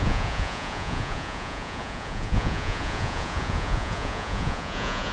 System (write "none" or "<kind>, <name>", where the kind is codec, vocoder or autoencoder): vocoder, Vocos